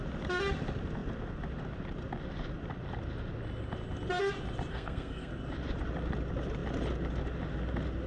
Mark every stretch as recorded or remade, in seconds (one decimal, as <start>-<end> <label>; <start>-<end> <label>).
0.0-4.7 recorded; 4.7-5.3 remade; 5.3-8.1 recorded